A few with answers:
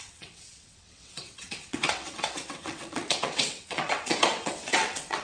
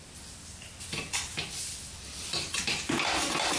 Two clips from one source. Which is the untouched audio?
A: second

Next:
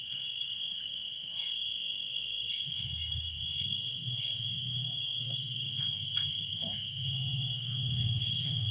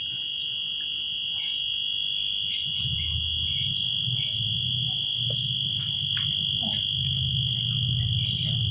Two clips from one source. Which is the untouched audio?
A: second